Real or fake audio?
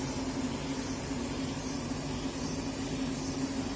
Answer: fake